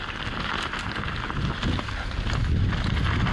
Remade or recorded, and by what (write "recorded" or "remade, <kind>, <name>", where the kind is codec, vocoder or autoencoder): recorded